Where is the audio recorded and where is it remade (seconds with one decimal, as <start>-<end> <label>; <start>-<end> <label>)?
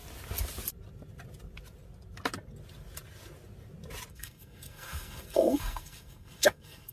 0.0-4.1 recorded; 4.1-6.9 remade